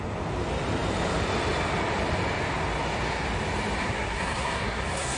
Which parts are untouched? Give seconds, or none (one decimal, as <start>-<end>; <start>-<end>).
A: 0.0-3.8